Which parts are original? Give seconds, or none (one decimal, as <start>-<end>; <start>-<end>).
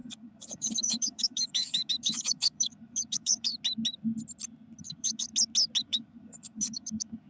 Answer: 3.5-4.8; 5.3-5.8